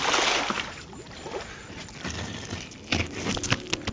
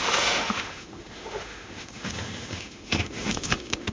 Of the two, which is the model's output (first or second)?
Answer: second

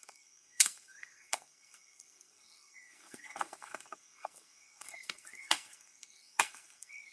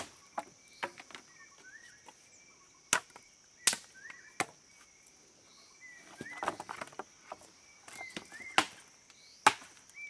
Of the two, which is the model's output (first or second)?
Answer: first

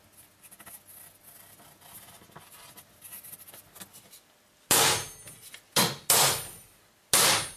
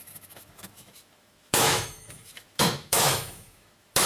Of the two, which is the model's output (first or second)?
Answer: second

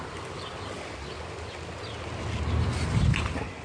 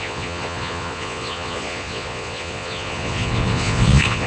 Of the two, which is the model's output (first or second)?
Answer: second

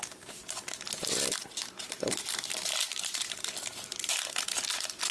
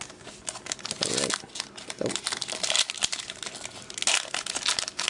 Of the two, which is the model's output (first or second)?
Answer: first